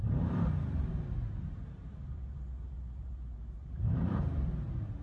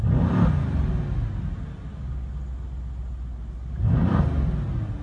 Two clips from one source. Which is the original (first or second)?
second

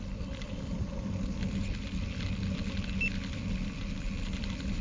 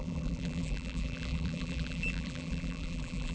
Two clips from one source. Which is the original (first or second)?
first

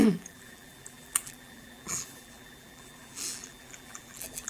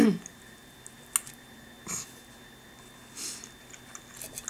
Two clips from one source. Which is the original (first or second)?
second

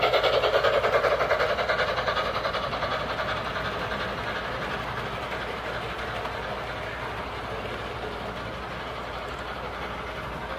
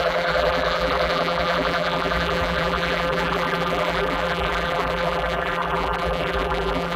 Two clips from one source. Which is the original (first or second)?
first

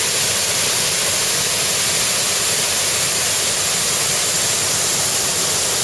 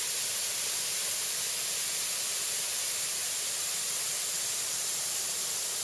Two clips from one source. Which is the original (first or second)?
first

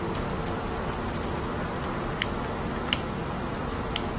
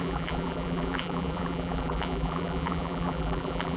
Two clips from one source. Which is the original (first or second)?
first